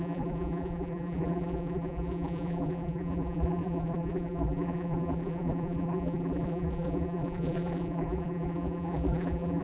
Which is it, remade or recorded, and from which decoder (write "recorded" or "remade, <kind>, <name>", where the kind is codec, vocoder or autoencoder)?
remade, vocoder, BigVGAN v2